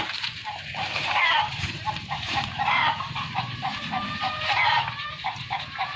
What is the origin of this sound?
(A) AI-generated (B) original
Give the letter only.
A